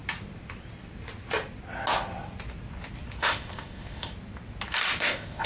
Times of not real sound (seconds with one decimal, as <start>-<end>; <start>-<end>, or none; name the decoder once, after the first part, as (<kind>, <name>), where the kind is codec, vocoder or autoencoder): 3.2-4.1 (codec, ZipCodec); 5.0-5.5